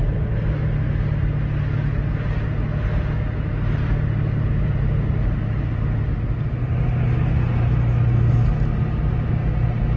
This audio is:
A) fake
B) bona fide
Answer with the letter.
B